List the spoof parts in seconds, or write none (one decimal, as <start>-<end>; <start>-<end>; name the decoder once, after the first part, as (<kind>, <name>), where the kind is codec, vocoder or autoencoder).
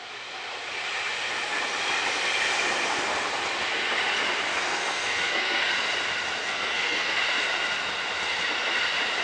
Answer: 4.5-5.7 (codec, SNAC); 6.4-7.2